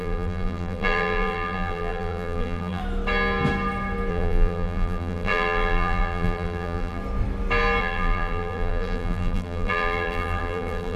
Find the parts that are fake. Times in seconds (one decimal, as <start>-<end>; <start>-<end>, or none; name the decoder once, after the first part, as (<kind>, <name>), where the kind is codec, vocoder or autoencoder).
0.0-2.8 (vocoder, BigVGAN v2); 4.1-7.0; 7.8-11.0

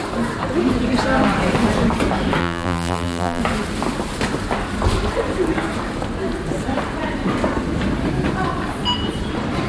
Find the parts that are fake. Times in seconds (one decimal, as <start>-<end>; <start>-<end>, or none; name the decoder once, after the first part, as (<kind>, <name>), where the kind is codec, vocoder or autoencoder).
2.4-3.4 (vocoder, BigVGAN v2)

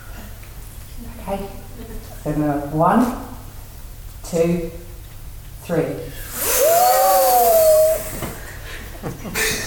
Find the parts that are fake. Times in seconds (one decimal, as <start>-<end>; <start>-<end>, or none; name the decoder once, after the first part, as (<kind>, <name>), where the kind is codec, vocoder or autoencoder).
3.8-5.3 (vocoder, BigVGAN v2)

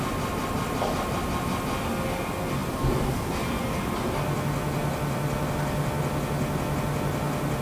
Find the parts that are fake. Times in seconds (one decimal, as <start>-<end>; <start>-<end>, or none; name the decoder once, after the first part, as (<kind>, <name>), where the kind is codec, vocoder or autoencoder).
2.6-3.6 (vocoder, BigVGAN v2)

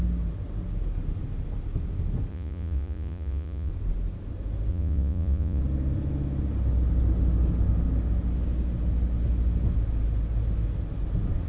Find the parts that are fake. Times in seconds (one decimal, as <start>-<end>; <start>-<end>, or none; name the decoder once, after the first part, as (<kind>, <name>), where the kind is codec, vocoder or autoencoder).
2.3-3.7 (vocoder, Vocos); 4.7-5.6

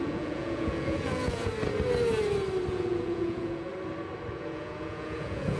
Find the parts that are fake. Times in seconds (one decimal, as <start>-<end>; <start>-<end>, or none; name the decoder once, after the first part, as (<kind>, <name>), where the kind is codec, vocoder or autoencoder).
0.0-1.5 (vocoder, Vocos); 2.7-3.7; 4.3-5.6